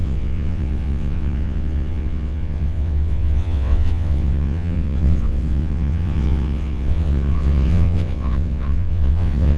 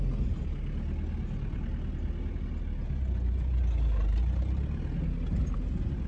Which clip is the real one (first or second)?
second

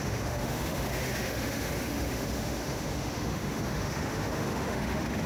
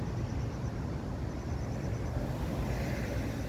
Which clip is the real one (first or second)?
second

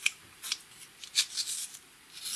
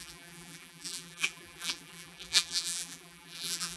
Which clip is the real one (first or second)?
first